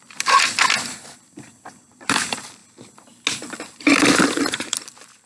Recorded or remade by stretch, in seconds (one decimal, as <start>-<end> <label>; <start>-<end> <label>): 0.0-2.6 remade; 2.6-3.8 recorded; 3.8-5.3 remade